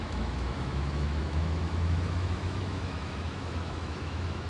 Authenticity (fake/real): fake